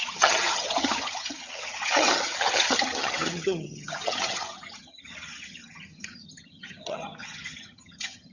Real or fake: fake